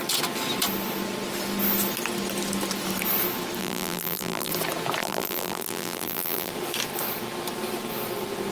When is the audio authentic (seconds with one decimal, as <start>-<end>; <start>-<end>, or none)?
0.0-3.6; 4.5-5.0; 6.5-8.5